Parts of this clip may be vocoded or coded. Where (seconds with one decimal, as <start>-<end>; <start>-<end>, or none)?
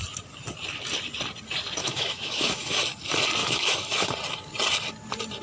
1.8-2.8; 3.4-4.1